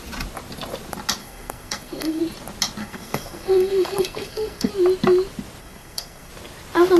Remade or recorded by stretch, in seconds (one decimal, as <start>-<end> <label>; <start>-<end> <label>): 0.0-1.2 recorded; 1.2-2.2 remade; 2.2-2.8 recorded; 2.8-4.7 remade; 4.7-5.6 recorded; 5.6-6.3 remade; 6.3-7.0 recorded